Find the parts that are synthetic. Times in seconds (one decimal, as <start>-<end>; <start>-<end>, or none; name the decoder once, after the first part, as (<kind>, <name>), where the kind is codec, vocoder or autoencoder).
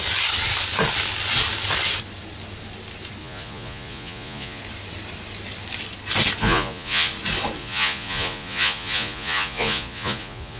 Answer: 3.2-4.6 (vocoder, Vocos); 6.4-7.1; 7.6-10.6